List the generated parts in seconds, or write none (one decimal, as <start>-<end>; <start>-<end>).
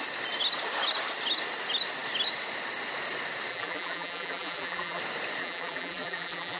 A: 3.5-5.0; 5.4-6.6